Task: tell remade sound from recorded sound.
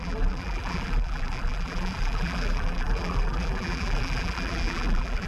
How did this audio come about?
remade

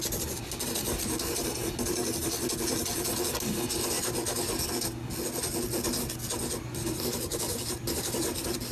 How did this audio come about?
recorded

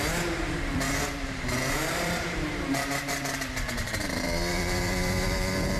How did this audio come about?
remade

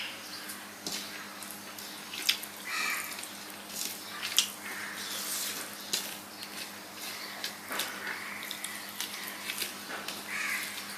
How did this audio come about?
recorded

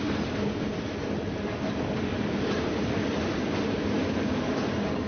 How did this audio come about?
recorded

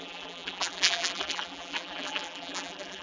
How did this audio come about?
remade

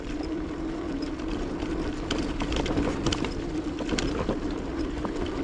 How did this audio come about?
remade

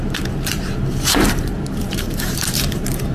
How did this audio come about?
remade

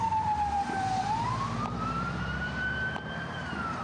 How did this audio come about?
remade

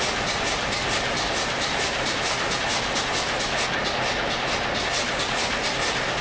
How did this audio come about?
recorded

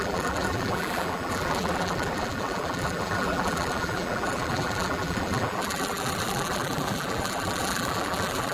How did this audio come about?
remade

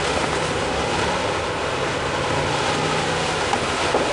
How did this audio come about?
recorded